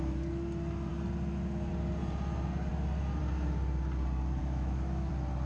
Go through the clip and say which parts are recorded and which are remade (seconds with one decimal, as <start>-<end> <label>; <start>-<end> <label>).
0.0-4.4 recorded; 4.4-5.1 remade; 5.1-5.5 recorded